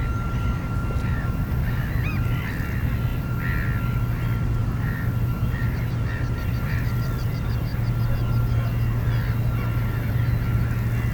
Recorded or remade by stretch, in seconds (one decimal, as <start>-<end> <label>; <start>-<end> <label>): 0.0-0.8 recorded; 0.8-2.5 remade; 2.5-3.1 recorded; 3.1-4.0 remade; 4.0-4.6 recorded; 4.6-7.3 remade; 7.3-11.1 recorded